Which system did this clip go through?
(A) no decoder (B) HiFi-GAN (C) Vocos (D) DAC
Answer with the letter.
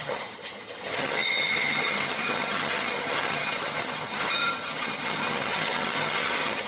B